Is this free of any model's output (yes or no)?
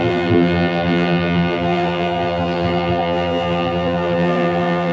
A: no